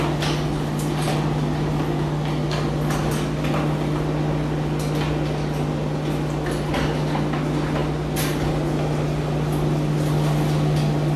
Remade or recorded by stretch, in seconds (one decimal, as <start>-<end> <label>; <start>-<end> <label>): 0.0-11.2 recorded